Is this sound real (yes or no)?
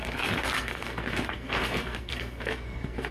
no